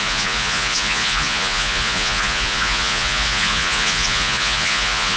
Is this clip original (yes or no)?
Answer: no